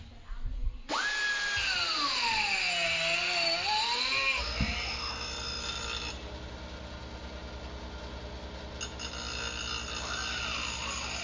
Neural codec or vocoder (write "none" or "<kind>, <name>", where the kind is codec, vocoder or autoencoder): none